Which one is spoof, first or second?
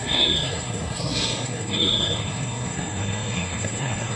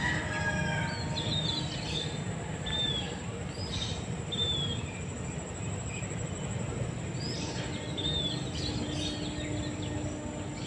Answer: first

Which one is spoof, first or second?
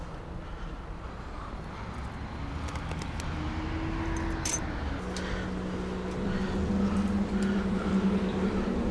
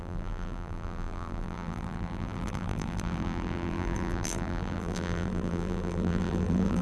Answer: second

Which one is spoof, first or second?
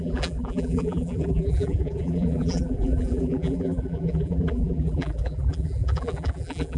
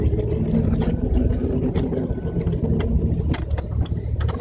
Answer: first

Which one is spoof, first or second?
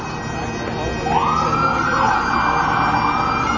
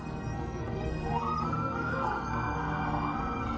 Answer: second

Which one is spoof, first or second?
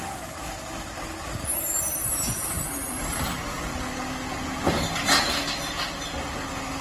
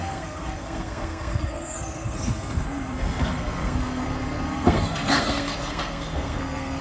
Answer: second